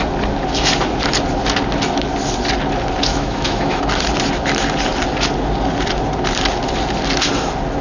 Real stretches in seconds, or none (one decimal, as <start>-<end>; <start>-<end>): 0.0-3.1; 3.8-7.8